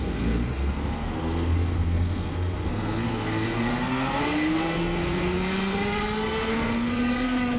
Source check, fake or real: fake